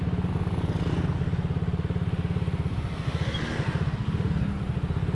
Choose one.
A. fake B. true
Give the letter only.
B